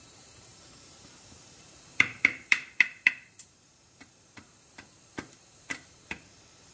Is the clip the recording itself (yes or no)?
no